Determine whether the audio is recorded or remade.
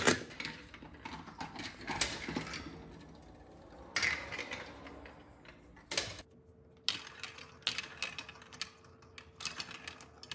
recorded